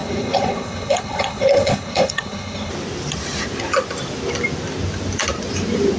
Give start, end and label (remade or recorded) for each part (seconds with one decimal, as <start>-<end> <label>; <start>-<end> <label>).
0.0-2.7 remade; 2.7-6.0 recorded